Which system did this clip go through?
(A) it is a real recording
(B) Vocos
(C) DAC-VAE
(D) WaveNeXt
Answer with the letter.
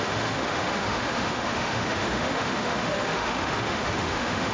C